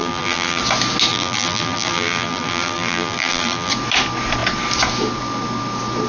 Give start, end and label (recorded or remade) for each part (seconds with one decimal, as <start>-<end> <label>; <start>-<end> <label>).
0.0-0.6 remade; 0.6-1.1 recorded; 1.1-3.7 remade; 3.7-6.1 recorded